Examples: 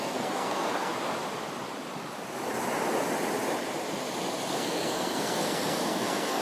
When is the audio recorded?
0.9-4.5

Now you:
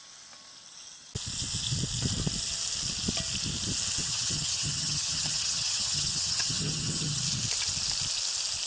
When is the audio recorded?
0.0-4.0; 7.2-8.7

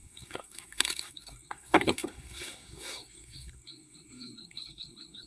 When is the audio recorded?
none

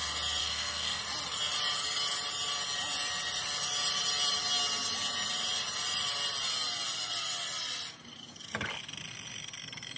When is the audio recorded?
0.0-0.4; 1.0-10.0

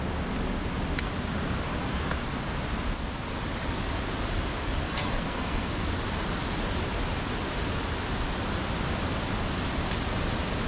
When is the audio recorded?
0.0-4.8; 5.9-10.7

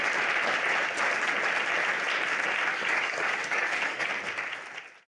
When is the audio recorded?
0.0-2.7; 4.2-5.1